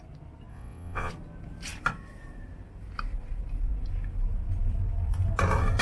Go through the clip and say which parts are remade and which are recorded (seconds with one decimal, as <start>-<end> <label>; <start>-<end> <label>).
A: 0.0-0.5 recorded; 0.5-1.1 remade; 1.1-5.8 recorded